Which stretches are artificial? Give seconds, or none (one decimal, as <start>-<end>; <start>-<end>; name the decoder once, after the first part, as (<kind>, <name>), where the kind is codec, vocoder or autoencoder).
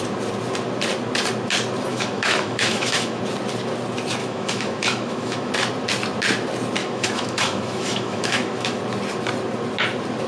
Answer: 1.9-3.2 (autoencoder, DAC-VAE); 4.2-5.5; 6.8-8.8